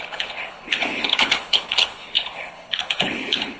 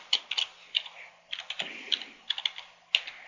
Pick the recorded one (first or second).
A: second